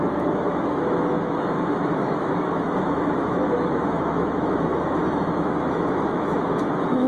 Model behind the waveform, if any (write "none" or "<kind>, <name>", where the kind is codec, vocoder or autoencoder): autoencoder, DAC-VAE